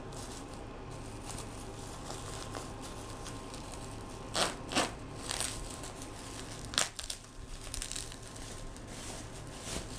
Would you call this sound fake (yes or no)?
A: no